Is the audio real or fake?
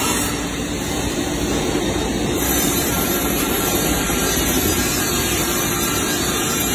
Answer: fake